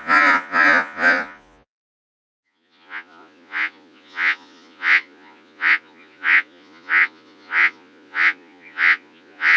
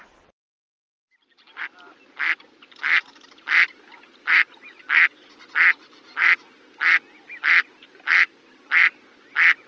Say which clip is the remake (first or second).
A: first